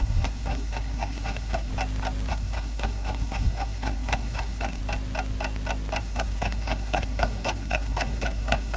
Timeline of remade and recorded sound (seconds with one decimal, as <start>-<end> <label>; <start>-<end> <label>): 0.0-1.7 remade; 1.7-2.3 recorded; 2.3-4.8 remade; 4.8-6.0 recorded; 6.0-8.8 remade